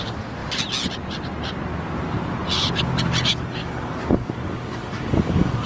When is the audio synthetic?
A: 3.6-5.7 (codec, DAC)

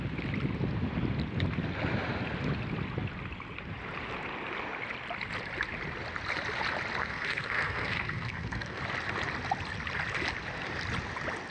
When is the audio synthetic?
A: 7.0-8.8 (codec, SNAC)